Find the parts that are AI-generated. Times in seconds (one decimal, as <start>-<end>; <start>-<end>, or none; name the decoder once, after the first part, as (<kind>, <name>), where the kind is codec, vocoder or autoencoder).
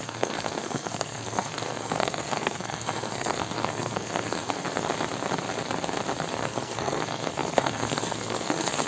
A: 0.0-4.9 (codec, SNAC); 6.4-8.9